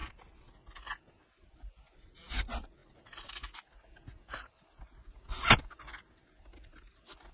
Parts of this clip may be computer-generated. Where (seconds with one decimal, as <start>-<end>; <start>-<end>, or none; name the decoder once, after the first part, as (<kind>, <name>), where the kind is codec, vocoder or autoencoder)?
none